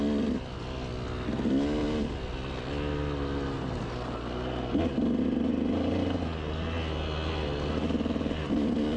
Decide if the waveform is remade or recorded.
recorded